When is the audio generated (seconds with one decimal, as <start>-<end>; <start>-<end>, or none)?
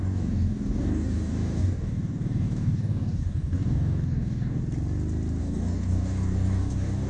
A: 0.0-4.6; 5.4-7.1